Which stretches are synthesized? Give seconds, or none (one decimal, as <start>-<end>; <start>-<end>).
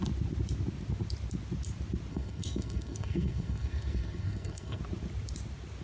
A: 2.1-4.8